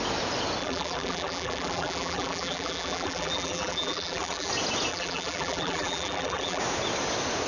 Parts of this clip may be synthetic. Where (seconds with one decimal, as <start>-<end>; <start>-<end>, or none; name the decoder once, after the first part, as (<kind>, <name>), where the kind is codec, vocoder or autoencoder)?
0.6-4.5 (vocoder, BigVGAN v2); 4.9-6.6